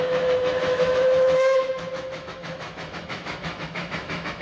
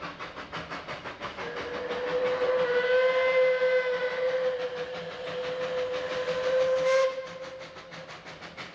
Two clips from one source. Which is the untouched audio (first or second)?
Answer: second